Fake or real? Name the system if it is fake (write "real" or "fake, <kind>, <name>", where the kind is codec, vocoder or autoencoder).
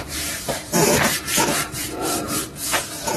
real